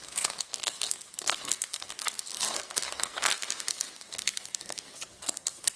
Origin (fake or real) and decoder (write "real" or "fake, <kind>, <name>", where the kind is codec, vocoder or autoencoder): fake, codec, SNAC